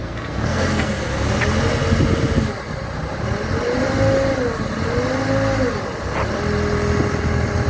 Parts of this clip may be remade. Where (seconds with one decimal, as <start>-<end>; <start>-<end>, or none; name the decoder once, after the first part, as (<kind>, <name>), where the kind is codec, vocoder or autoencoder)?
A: 0.0-0.9 (codec, SNAC)